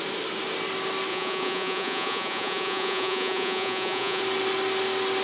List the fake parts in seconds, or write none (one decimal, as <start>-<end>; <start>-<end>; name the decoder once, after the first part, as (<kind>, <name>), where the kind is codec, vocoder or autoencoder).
1.1-4.2 (vocoder, Vocos)